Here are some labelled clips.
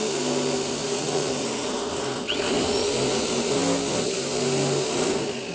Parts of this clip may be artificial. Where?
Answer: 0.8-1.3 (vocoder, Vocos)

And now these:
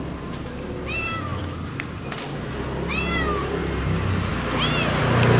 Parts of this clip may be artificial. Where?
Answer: none

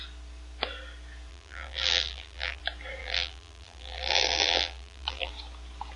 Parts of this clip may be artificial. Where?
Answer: 1.3-2.6 (vocoder, BigVGAN v2); 3.0-5.3